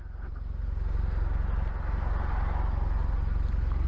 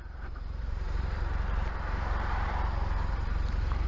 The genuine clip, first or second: first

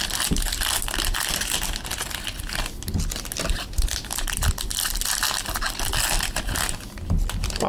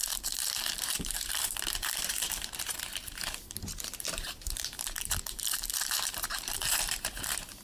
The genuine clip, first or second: first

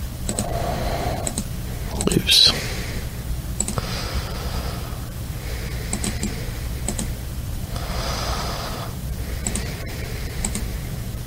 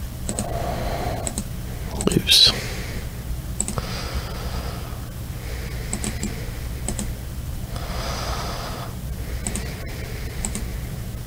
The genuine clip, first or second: second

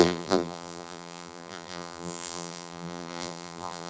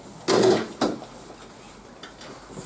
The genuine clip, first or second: second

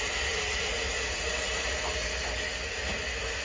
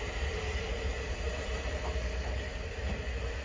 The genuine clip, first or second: first